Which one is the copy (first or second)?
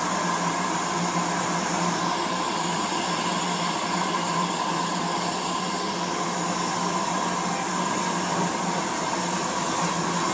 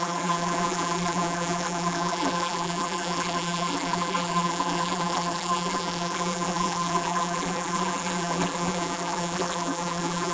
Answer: second